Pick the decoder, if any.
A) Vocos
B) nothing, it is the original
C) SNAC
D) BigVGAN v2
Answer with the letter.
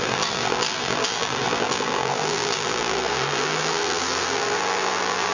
D